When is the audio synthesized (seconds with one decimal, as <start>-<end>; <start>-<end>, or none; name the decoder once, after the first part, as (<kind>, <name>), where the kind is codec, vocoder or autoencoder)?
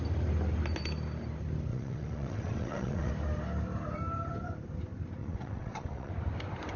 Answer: 1.7-3.1 (vocoder, WaveNeXt); 5.2-6.1